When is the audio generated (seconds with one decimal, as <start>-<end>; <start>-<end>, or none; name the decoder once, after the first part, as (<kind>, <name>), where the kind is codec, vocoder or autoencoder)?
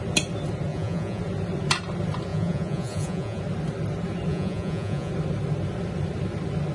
0.7-1.2 (vocoder, Vocos); 2.3-3.4; 4.3-5.1